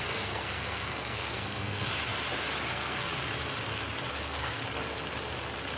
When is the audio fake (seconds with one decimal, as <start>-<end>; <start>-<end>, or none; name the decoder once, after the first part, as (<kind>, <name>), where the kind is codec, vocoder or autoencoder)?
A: 0.0-1.9 (codec, SNAC); 2.7-3.1; 4.1-4.6